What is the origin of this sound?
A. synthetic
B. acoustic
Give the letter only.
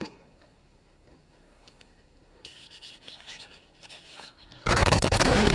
A